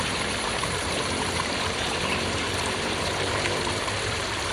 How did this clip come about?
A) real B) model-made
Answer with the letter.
B